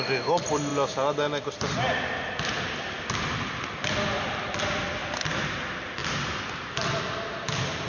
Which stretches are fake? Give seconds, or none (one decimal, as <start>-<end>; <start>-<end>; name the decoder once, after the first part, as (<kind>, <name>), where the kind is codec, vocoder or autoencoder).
6.0-7.0 (vocoder, BigVGAN v2)